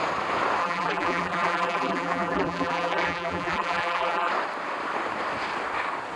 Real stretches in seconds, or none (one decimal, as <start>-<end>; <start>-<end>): 0.0-0.6; 4.3-6.2

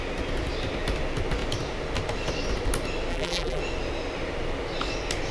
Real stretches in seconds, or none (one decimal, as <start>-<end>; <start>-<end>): 0.0-3.1; 3.6-5.3

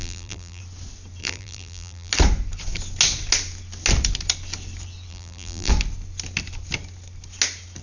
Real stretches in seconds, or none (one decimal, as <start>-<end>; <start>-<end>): 0.6-1.2; 2.1-5.1; 5.7-7.8

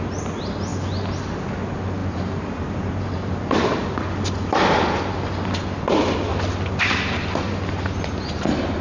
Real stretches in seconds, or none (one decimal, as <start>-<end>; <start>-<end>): 0.0-2.0; 3.8-8.8

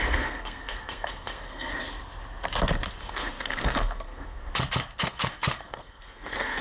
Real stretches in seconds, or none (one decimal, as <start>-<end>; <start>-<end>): 1.7-3.0; 4.5-5.0

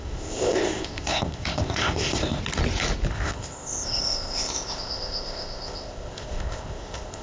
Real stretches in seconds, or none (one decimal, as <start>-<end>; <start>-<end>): 2.4-3.1

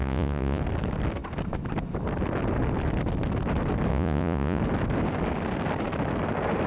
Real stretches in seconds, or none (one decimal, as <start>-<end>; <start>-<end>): 0.6-3.9; 4.6-6.7